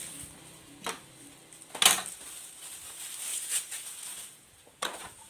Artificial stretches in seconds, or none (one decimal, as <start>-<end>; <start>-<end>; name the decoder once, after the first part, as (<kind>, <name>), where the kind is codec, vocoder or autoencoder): 3.3-5.3 (vocoder, Vocos)